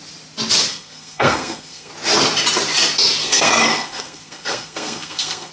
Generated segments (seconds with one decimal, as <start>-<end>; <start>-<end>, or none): 0.7-1.9; 3.2-5.5